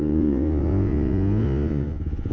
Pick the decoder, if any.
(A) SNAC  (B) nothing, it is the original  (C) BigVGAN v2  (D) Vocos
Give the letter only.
D